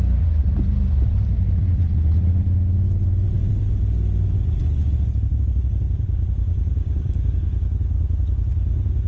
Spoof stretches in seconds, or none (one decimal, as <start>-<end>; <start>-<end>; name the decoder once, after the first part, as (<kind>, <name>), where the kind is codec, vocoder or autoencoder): 0.4-1.6 (vocoder, BigVGAN v2); 5.3-7.3